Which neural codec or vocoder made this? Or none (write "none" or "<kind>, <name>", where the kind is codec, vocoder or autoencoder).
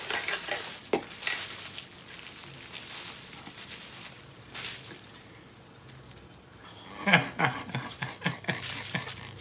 none